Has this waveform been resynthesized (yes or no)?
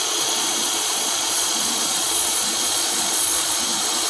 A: yes